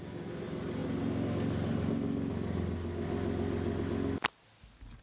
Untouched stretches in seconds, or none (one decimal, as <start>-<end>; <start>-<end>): 0.0-5.0

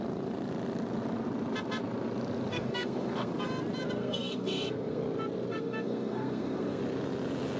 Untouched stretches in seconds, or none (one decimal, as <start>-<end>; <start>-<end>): 0.0-2.5; 3.3-4.0; 5.0-5.5; 6.8-7.6

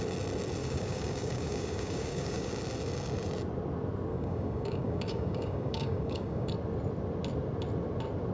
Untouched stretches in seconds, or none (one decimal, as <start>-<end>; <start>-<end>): 0.0-0.6; 2.5-4.1; 6.5-8.3

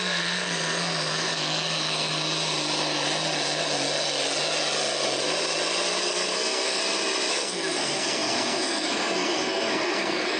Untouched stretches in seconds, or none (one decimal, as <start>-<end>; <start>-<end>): 2.1-6.0; 6.8-7.3

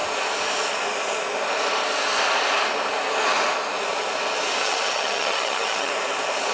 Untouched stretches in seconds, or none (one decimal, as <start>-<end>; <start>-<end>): 0.0-4.6; 5.9-6.5

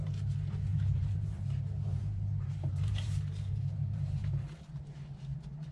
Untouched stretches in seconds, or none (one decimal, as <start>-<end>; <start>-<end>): 0.0-0.7; 1.4-1.9; 4.2-5.7

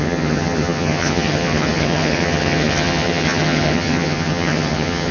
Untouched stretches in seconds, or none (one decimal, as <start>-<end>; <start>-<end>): none

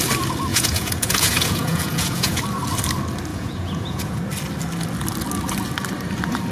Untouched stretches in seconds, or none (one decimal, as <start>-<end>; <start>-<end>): 0.0-0.5; 2.4-3.3; 4.2-6.5